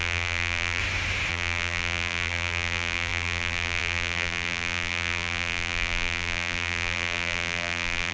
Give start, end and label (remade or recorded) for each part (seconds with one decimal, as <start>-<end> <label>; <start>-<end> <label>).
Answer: 0.0-0.8 remade; 0.8-1.3 recorded; 1.3-8.1 remade